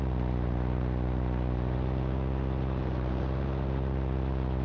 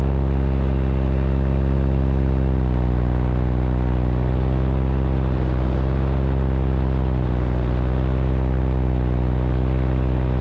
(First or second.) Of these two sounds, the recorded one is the second